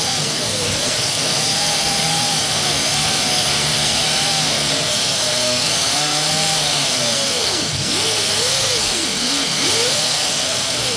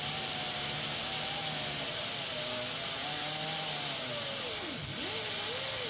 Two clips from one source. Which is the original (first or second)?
second